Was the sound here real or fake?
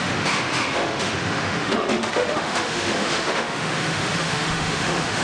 fake